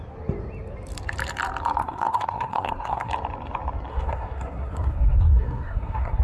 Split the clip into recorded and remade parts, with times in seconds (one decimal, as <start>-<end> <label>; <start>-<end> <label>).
0.0-1.8 recorded; 1.8-3.1 remade; 3.1-3.9 recorded; 3.9-6.2 remade